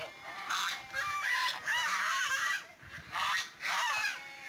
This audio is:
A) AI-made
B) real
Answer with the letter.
A